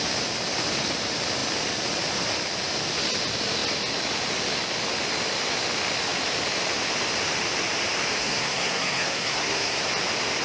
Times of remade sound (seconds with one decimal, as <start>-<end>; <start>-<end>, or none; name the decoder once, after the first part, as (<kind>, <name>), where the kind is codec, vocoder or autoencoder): 8.2-9.9 (codec, SNAC)